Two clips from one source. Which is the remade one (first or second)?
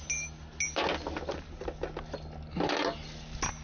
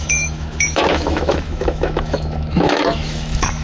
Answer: second